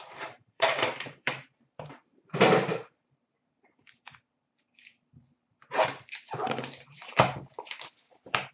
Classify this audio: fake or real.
fake